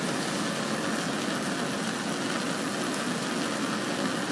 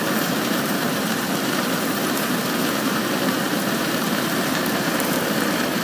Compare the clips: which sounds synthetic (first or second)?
second